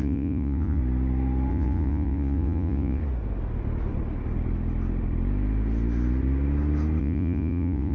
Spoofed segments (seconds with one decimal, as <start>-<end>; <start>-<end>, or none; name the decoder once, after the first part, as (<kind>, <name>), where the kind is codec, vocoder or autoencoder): 0.0-0.8 (vocoder, Vocos); 1.5-3.0; 7.0-7.9